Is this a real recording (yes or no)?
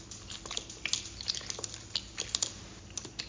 yes